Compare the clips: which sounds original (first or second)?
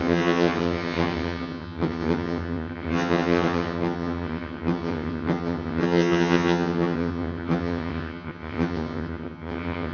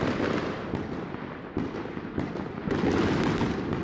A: second